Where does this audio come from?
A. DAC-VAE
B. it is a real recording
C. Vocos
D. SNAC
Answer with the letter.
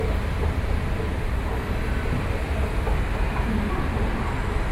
B